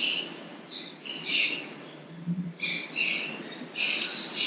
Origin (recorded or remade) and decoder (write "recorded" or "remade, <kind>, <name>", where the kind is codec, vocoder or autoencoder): remade, vocoder, BigVGAN v2